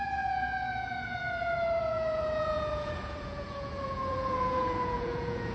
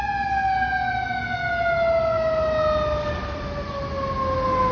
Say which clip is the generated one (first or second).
first